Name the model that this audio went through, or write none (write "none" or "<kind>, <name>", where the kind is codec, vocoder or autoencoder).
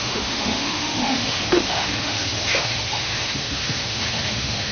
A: autoencoder, DAC-VAE